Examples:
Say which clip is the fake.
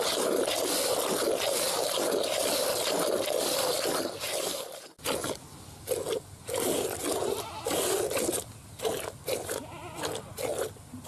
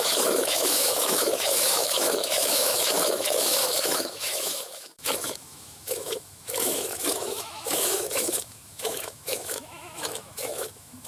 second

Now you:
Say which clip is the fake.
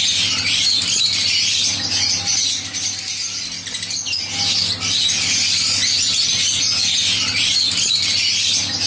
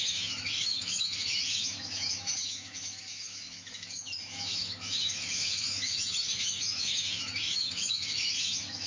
second